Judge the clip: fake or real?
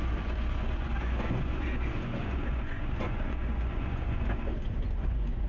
fake